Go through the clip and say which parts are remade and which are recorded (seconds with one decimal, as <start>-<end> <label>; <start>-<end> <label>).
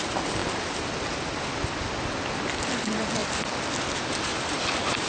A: 0.0-4.3 recorded; 4.3-5.1 remade